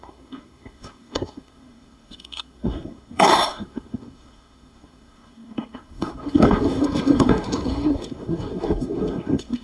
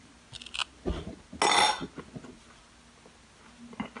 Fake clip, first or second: first